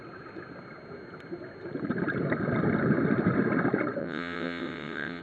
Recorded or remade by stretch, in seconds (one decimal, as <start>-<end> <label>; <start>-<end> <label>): 0.0-4.0 recorded; 4.0-5.2 remade